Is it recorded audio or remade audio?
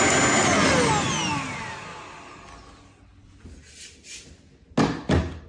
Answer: recorded